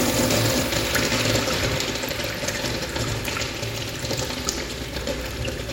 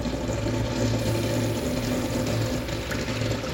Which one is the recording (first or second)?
second